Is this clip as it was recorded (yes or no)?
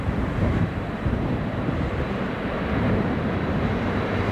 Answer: no